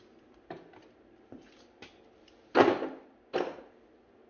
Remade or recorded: recorded